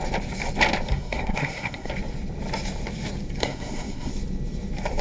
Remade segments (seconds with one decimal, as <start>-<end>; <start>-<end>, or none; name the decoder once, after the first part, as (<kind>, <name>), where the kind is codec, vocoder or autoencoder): 0.9-1.9 (codec, SNAC); 3.4-4.1